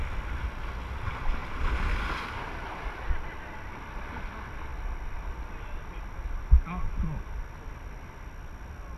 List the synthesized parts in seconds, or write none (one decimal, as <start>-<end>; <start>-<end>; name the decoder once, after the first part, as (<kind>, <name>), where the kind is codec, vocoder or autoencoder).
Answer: none